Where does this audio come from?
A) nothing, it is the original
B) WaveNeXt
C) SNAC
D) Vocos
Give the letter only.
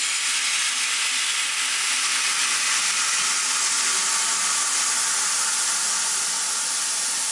A